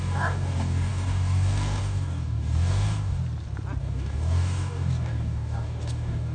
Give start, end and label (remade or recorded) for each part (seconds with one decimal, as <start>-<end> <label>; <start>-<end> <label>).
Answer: 0.0-3.2 remade; 3.2-3.8 recorded; 3.8-6.3 remade